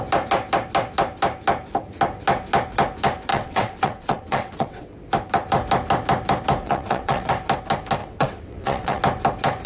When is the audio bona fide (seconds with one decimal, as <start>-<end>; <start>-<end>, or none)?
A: 0.0-3.3; 4.9-6.6; 7.3-8.0; 9.0-9.7